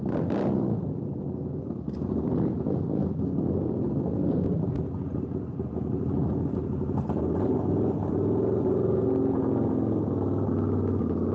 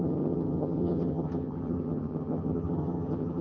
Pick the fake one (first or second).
second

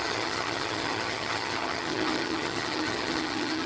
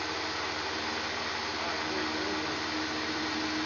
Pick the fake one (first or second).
first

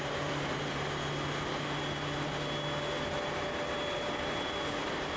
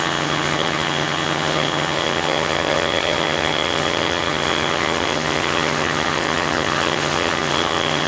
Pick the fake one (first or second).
second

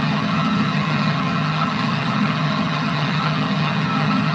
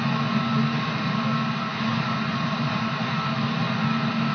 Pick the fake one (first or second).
first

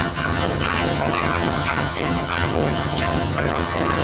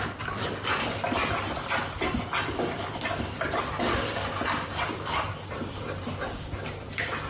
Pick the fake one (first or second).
first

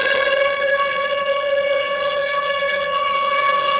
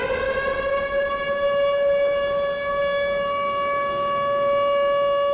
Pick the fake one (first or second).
first